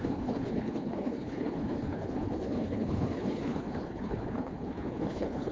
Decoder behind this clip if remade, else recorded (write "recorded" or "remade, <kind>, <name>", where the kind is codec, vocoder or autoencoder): remade, codec, HILCodec